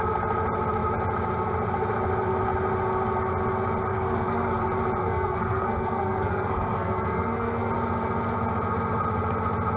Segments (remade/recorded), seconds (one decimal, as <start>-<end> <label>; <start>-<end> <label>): 0.0-3.9 recorded; 3.9-4.6 remade; 4.6-5.0 recorded; 5.0-7.7 remade; 7.7-9.8 recorded